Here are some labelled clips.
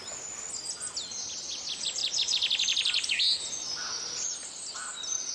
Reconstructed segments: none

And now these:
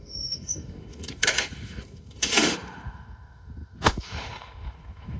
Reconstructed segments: 0.0-5.2 (autoencoder, DAC-VAE)

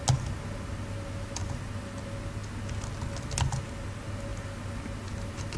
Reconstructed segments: none

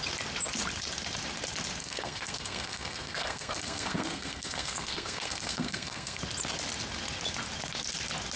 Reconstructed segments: 1.8-6.2 (codec, SNAC)